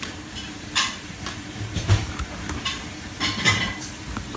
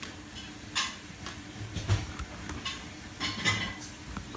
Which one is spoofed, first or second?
first